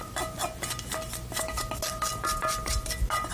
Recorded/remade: recorded